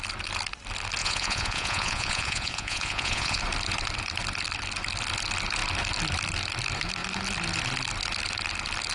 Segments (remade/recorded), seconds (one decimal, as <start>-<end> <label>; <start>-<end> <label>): 0.0-1.0 recorded; 1.0-3.4 remade; 3.4-8.9 recorded